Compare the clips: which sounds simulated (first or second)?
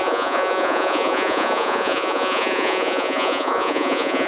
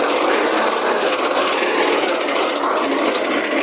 first